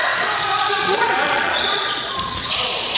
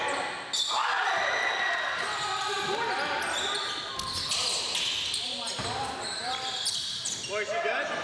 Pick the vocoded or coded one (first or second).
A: first